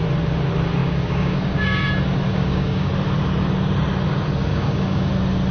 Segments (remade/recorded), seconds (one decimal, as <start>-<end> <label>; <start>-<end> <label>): 0.0-0.8 recorded; 0.8-1.9 remade; 1.9-2.3 recorded; 2.3-2.9 remade; 2.9-4.5 recorded; 4.5-5.1 remade; 5.1-5.5 recorded